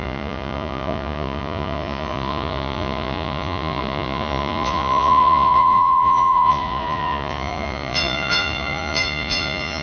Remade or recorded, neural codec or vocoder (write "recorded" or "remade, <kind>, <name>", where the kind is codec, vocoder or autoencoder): remade, vocoder, Vocos